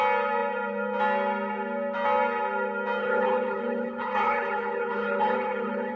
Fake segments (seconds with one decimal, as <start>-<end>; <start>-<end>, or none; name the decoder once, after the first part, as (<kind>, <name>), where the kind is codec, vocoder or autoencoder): 3.0-6.0 (codec, HILCodec)

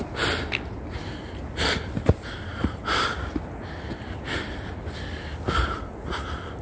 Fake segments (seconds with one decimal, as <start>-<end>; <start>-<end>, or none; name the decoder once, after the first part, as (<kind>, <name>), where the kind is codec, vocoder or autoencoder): 2.5-3.3 (vocoder, BigVGAN v2)

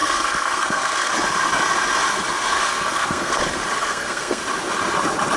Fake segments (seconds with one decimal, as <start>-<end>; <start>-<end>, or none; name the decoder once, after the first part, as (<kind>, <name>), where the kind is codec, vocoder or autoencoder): 0.0-1.1 (codec, SNAC); 2.6-3.4; 3.8-4.4

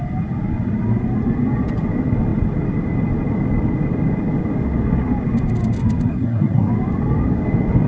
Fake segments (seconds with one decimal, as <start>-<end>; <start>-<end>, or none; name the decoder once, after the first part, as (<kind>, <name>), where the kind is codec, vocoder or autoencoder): 6.1-6.7 (codec, SNAC)